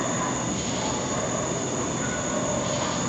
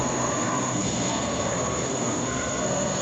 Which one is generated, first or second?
second